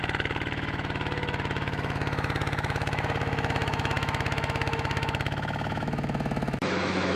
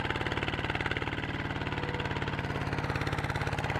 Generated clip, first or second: first